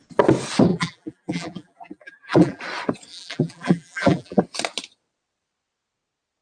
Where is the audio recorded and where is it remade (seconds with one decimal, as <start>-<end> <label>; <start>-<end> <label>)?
0.0-0.7 recorded; 0.7-2.6 remade; 2.6-3.1 recorded; 3.1-4.4 remade; 4.4-6.4 recorded